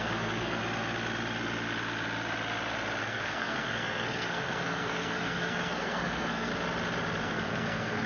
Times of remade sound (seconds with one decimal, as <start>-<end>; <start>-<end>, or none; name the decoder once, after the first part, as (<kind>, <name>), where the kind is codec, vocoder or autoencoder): 0.0-0.6 (codec, SNAC); 3.0-6.5; 7.2-8.1